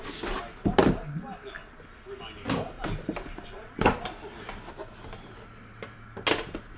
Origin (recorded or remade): recorded